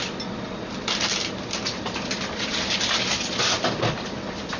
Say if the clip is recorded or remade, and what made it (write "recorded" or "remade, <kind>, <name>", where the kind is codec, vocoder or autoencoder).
recorded